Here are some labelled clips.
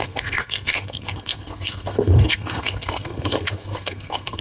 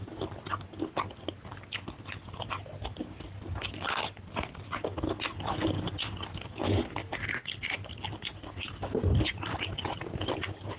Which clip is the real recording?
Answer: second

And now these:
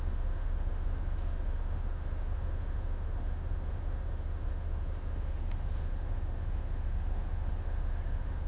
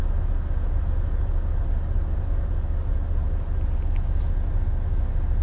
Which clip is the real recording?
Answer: second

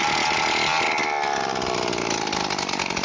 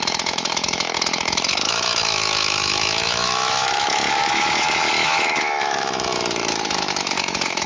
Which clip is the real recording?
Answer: first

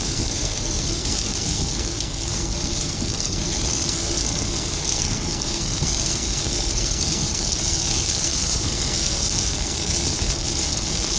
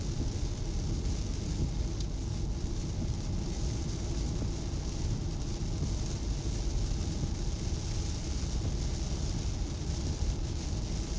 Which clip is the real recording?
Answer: second